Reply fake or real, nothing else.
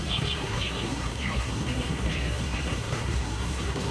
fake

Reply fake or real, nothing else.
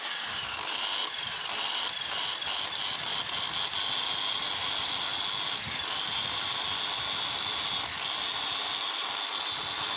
real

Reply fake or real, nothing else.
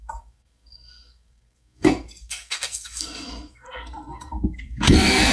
fake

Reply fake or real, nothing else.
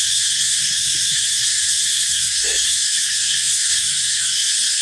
fake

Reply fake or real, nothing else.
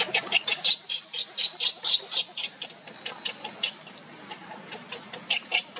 real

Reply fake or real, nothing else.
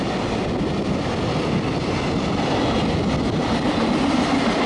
real